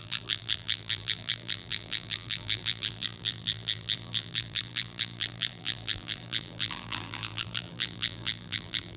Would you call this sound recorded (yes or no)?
no